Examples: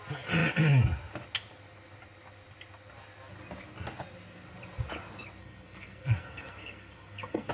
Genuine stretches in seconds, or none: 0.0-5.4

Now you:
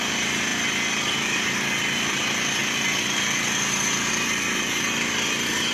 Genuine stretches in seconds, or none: 0.0-5.7

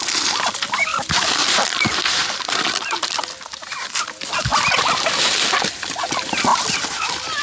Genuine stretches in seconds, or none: 0.0-0.9; 3.8-4.5; 6.0-6.5

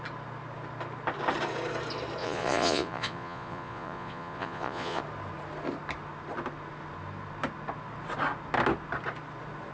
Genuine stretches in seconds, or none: 0.0-2.2; 5.0-9.7

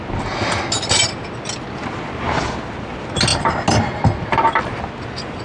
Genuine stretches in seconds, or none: 0.0-5.4

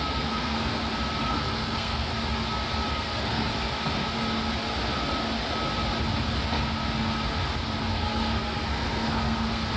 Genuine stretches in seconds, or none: 0.7-1.2; 2.1-2.9; 3.5-7.9